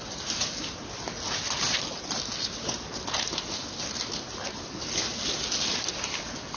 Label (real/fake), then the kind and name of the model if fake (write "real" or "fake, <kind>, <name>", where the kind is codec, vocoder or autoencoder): real